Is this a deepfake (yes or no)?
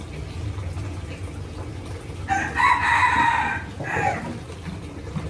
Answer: no